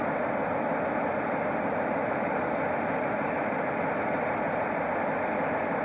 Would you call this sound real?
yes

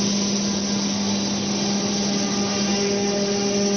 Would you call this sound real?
yes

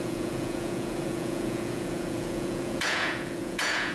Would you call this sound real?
no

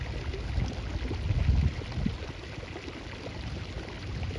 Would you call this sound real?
yes